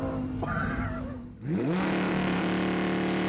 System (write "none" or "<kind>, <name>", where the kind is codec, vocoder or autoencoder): vocoder, BigVGAN v2